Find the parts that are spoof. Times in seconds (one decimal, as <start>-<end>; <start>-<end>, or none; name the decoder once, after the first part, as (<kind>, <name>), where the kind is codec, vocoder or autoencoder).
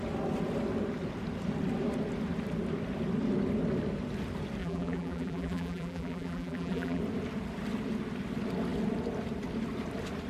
4.6-7.0 (vocoder, BigVGAN v2)